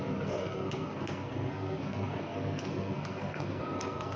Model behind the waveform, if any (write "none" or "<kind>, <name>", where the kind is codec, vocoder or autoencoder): codec, SNAC